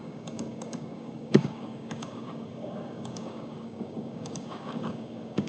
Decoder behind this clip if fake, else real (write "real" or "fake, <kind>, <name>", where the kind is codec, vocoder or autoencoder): fake, codec, DAC